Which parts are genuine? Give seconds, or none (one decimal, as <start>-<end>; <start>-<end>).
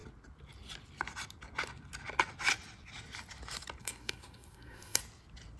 0.0-3.8; 5.0-5.6